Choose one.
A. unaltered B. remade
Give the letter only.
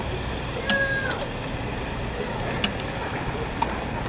A